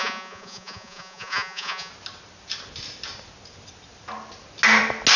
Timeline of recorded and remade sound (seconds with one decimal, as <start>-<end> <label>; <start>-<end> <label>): 0.0-1.9 remade; 1.9-5.2 recorded